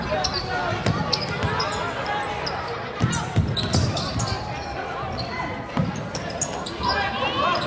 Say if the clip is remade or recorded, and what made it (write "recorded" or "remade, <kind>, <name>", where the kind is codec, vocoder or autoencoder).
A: recorded